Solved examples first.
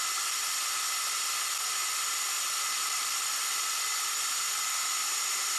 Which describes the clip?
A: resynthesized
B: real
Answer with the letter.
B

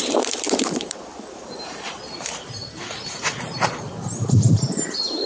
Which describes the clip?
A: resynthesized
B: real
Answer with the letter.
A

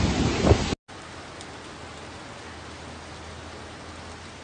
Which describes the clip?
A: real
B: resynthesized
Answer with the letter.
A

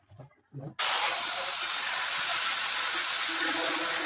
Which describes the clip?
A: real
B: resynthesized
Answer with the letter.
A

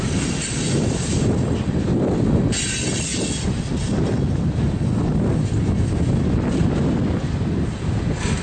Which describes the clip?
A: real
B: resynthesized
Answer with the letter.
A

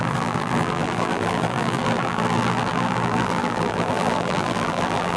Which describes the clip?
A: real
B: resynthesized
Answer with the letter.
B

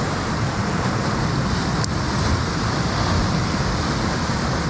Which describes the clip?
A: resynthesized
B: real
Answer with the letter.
B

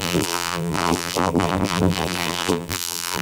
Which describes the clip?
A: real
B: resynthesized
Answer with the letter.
B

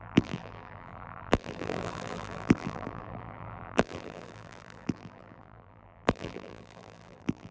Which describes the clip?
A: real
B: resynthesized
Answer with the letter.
B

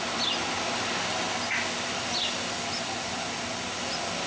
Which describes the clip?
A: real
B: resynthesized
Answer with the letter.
A